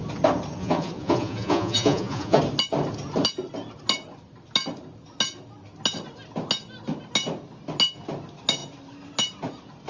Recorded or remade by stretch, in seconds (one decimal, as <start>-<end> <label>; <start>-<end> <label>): 0.0-0.6 recorded; 0.6-2.4 remade; 2.4-9.9 recorded